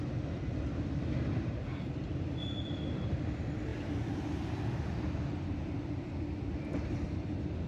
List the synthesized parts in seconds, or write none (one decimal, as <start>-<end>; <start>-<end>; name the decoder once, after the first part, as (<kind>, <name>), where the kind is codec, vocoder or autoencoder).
none

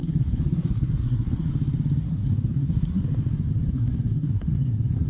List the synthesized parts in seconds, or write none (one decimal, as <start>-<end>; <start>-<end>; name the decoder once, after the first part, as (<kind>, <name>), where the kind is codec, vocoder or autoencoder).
0.0-1.5 (codec, SNAC); 2.0-3.0; 3.7-5.1

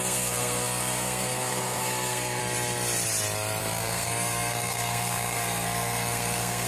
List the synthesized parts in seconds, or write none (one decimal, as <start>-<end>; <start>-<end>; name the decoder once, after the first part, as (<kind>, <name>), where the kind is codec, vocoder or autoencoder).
0.0-2.4 (codec, SNAC); 3.6-6.7

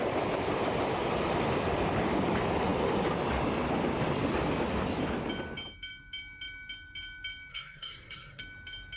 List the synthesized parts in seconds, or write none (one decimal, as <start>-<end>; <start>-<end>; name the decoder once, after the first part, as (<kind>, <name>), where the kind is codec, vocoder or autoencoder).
7.5-8.4 (codec, SNAC)

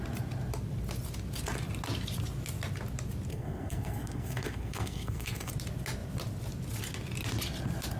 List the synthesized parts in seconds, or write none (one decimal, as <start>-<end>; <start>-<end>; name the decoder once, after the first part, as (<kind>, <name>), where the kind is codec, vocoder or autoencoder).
3.3-5.5 (codec, SNAC)

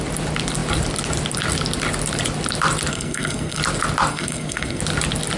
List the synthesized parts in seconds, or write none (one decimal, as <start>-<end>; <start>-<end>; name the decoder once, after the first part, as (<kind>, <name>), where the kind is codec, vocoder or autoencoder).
2.9-3.6 (codec, SNAC); 4.1-4.8